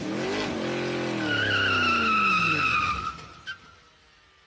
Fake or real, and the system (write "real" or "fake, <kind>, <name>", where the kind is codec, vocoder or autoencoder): real